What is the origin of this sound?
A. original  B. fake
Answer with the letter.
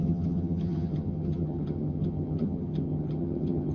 B